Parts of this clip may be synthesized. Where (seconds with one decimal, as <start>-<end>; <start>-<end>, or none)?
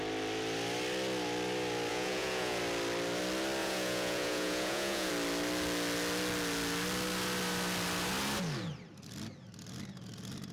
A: 1.9-2.6; 3.6-5.1